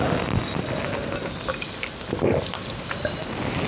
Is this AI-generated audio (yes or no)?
no